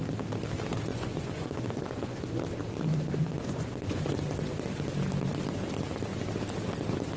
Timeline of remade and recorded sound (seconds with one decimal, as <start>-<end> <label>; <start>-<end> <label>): 0.0-0.9 recorded; 0.9-2.4 remade; 2.4-2.9 recorded; 2.9-4.1 remade; 4.1-7.2 recorded